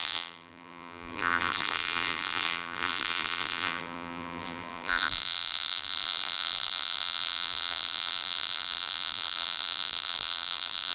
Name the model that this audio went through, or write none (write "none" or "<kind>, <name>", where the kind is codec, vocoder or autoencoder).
vocoder, BigVGAN v2